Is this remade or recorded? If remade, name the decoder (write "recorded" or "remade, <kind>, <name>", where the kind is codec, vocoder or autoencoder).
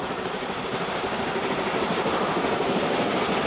recorded